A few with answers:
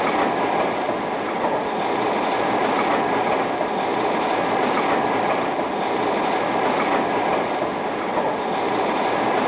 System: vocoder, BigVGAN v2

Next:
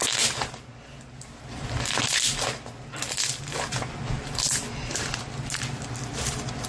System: none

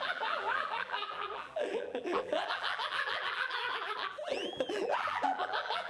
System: vocoder, BigVGAN v2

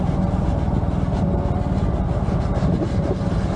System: none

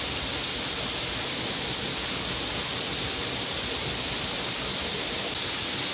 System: none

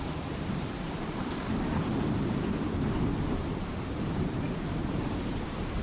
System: vocoder, BigVGAN v2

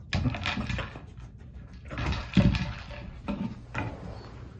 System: none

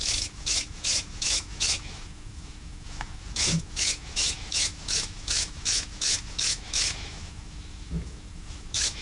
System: autoencoder, DAC-VAE